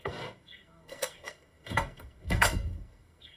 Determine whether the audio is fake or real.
fake